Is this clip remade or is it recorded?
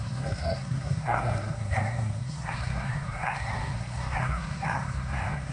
remade